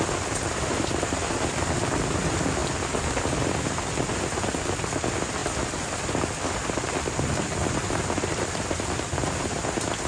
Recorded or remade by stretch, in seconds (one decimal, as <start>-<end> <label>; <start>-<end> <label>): 0.0-10.1 recorded

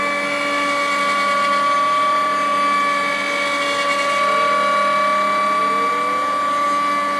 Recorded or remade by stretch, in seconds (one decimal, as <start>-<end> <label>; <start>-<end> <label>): 0.0-7.2 recorded

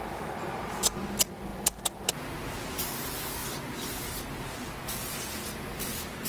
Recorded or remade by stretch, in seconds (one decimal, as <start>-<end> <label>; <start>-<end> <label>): 0.0-3.4 recorded; 3.4-3.9 remade; 3.9-6.3 recorded